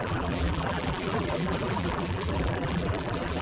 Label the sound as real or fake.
fake